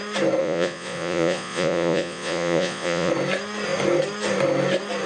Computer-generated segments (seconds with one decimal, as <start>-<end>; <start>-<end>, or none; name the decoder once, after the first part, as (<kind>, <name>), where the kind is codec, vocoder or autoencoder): 0.4-3.1 (vocoder, Vocos)